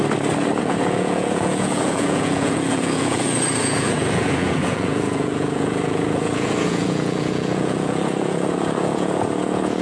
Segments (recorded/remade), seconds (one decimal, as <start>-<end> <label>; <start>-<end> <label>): 0.0-0.6 recorded; 0.6-9.8 remade